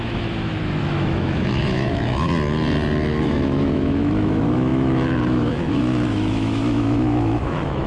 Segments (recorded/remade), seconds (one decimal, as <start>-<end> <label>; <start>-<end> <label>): 0.0-2.3 remade; 2.3-3.2 recorded; 3.2-7.9 remade